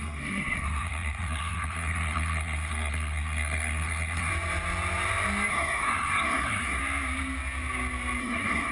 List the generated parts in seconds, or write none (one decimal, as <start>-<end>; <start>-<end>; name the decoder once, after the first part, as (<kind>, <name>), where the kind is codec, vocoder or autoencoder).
0.0-4.3 (codec, SNAC); 5.5-6.8; 8.2-8.7